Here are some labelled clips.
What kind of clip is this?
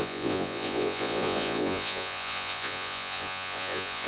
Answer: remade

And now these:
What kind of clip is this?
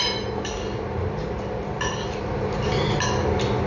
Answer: recorded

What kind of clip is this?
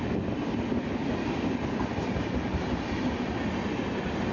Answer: recorded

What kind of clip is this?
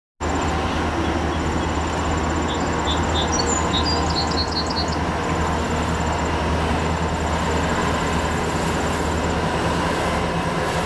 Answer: recorded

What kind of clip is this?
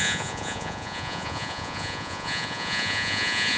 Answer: remade